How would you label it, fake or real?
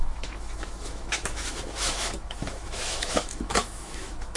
fake